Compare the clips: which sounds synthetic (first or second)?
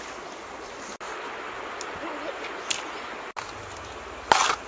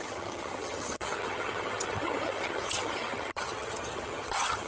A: second